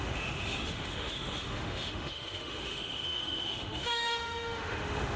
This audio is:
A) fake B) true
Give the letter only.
A